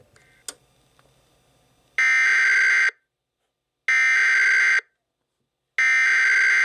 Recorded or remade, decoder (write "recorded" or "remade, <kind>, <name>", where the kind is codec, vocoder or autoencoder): recorded